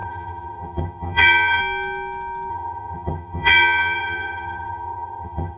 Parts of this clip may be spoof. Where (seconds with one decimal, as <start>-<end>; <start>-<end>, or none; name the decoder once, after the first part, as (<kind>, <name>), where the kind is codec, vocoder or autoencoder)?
0.0-1.6 (vocoder, HiFi-GAN); 2.5-5.6